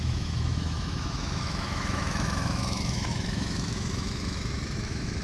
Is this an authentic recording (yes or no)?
no